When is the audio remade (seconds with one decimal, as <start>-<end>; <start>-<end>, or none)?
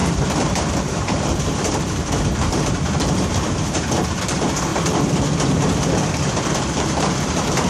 0.0-4.7; 6.6-7.7